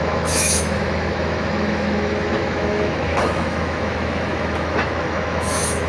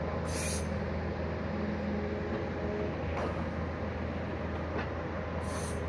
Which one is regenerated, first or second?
first